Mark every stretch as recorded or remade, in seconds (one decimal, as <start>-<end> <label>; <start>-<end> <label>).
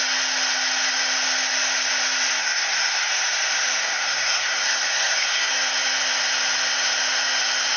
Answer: 0.0-2.4 recorded; 2.4-3.1 remade; 3.1-3.8 recorded; 3.8-5.5 remade; 5.5-7.8 recorded